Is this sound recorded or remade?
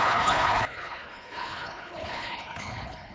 remade